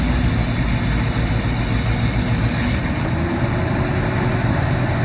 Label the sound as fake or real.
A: real